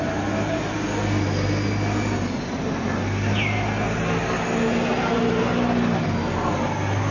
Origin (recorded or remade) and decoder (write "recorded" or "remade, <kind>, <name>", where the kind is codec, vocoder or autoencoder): recorded